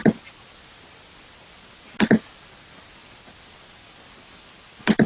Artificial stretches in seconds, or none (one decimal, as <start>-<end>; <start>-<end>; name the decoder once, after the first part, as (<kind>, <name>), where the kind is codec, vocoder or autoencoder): none